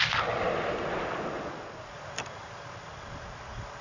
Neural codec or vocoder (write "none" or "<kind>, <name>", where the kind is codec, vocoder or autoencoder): none